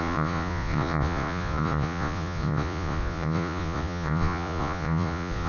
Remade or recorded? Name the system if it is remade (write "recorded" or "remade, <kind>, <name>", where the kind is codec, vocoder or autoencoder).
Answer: remade, vocoder, Vocos